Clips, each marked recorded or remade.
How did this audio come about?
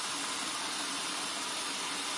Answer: recorded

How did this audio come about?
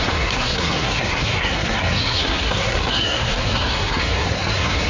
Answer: remade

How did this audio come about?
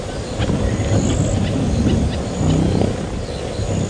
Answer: recorded